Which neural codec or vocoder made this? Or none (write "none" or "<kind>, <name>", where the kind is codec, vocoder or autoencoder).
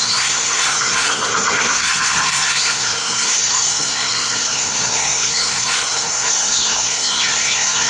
codec, SNAC